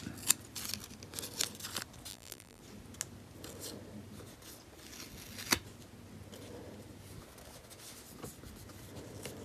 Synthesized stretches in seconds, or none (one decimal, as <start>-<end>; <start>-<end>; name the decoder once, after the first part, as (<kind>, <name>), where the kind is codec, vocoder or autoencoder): 2.1-2.6 (vocoder, BigVGAN v2)